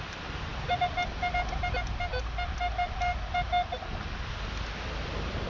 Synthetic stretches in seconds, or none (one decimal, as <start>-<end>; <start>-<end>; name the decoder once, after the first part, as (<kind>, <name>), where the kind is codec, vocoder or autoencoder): none